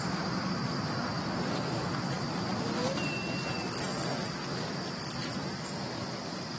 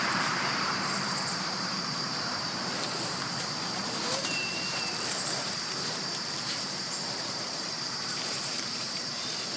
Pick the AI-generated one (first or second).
second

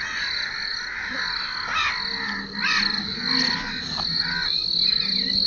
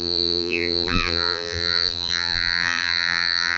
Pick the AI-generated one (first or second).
second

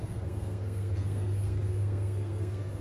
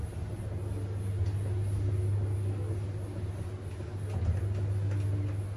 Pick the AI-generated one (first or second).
first